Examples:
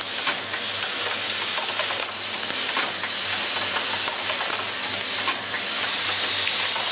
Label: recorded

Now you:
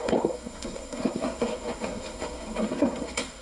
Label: remade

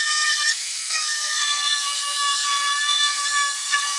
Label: remade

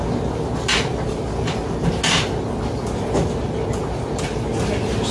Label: recorded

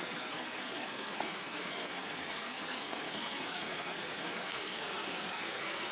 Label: remade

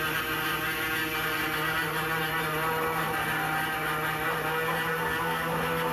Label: recorded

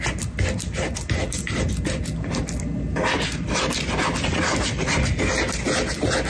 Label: recorded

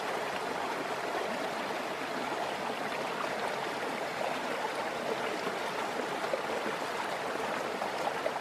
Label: recorded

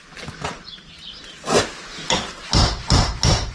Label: recorded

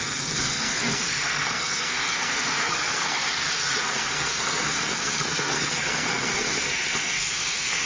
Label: remade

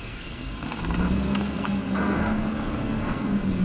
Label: remade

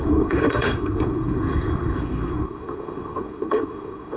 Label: remade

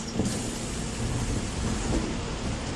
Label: recorded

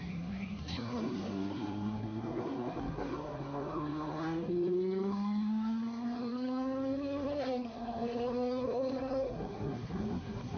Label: remade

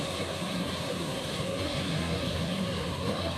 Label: remade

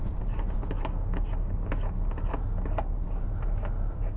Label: recorded